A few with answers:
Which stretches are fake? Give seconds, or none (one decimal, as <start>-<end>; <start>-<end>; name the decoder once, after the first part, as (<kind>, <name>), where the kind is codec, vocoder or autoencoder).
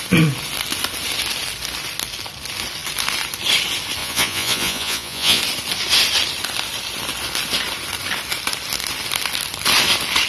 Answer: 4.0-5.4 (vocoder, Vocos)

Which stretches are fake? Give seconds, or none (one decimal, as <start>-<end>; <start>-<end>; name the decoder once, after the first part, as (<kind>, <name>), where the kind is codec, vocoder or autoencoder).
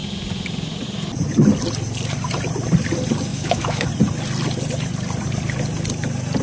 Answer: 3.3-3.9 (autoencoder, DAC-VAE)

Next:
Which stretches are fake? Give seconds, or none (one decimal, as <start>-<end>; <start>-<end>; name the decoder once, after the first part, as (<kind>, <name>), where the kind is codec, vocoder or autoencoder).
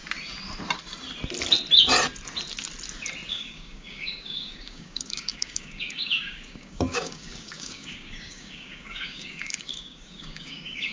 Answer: 3.3-10.9 (codec, DAC)